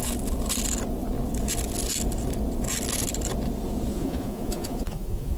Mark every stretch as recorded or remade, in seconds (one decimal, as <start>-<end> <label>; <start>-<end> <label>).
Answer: 0.0-3.9 recorded; 3.9-5.4 remade